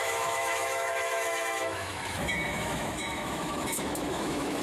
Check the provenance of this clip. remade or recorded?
remade